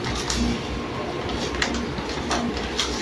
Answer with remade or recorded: recorded